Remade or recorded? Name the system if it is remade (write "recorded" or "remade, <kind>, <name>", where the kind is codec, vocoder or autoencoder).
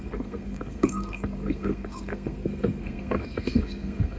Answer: remade, codec, SNAC